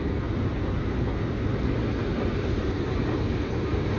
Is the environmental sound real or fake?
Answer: real